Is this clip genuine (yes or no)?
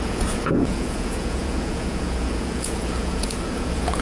no